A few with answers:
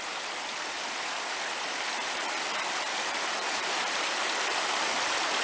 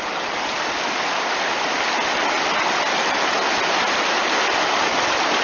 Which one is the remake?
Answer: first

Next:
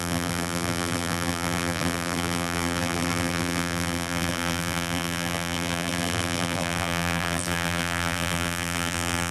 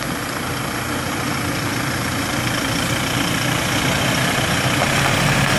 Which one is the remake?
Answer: first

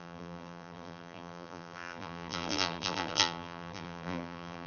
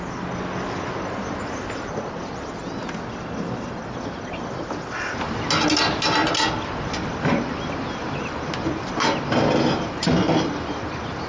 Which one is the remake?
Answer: first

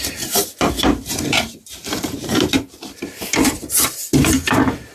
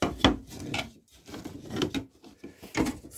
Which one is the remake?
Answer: first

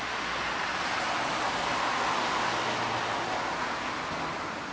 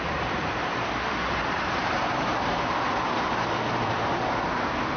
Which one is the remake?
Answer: second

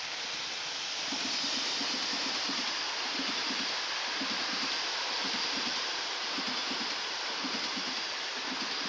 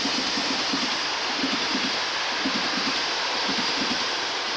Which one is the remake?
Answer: first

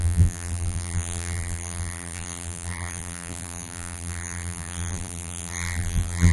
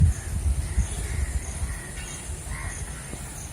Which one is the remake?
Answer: first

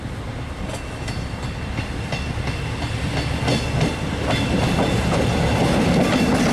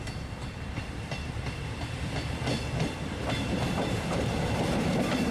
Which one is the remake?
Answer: second